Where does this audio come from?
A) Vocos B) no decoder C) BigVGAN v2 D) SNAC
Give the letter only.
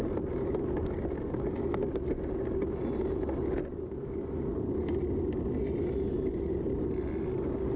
B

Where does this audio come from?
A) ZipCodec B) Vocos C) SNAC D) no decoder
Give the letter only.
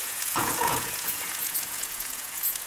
B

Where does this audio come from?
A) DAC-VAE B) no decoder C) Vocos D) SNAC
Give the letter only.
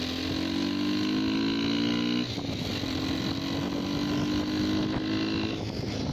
B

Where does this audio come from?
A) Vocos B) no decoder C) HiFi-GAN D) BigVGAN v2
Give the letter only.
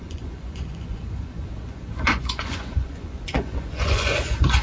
A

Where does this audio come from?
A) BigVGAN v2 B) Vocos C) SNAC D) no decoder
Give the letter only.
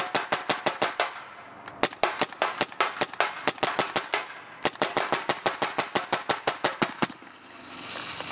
D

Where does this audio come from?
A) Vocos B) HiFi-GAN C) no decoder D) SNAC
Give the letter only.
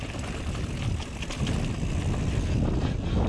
C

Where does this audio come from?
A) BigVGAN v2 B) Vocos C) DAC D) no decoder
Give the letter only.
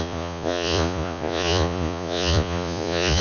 B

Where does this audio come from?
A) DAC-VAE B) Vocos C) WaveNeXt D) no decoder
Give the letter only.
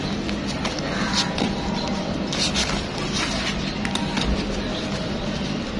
D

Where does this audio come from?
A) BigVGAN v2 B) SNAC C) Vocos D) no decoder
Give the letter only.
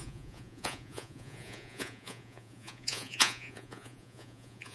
C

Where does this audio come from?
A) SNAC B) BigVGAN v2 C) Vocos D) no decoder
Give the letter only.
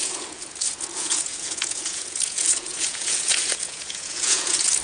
C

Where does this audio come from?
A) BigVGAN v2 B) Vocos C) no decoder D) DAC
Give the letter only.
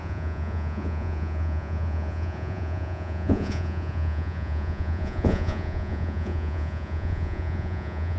B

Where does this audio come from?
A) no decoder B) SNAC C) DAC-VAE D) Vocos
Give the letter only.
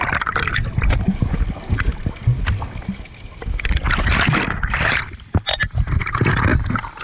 A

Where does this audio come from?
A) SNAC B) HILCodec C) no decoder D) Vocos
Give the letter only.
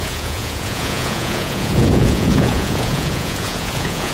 D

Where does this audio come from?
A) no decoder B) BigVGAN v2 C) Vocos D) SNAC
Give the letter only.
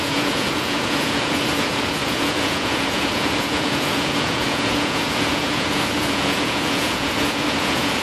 C